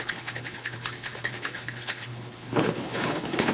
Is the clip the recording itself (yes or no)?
no